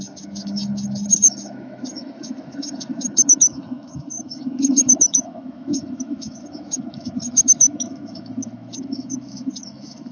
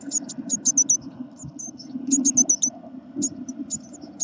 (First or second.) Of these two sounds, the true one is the second